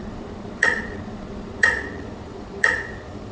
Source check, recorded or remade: remade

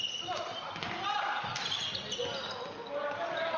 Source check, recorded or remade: recorded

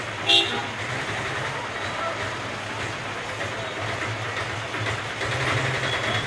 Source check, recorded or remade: recorded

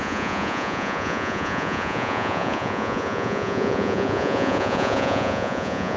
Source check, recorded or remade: remade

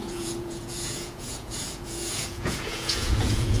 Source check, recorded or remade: remade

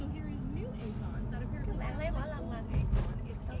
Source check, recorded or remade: recorded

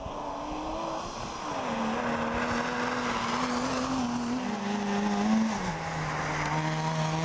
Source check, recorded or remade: recorded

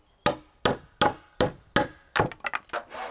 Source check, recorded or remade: recorded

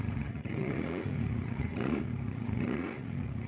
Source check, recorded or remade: remade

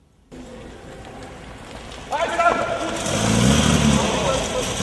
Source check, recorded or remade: recorded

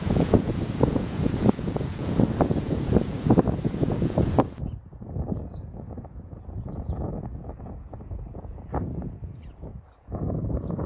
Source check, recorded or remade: remade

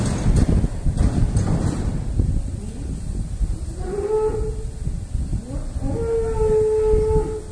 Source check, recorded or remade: recorded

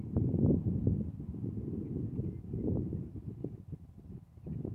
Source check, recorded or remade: recorded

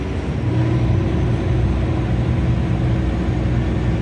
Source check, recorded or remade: recorded